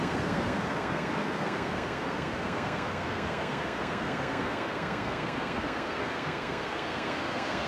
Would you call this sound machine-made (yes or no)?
yes